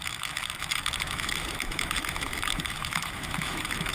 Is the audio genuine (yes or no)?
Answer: no